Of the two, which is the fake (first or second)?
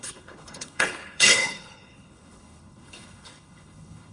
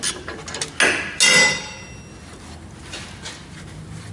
first